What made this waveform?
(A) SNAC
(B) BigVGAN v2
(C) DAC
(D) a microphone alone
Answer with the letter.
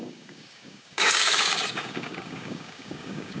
C